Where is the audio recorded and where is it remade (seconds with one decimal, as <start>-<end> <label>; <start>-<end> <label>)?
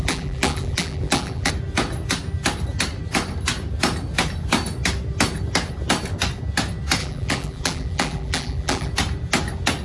0.0-1.5 remade; 1.5-7.0 recorded; 7.0-8.9 remade; 8.9-9.8 recorded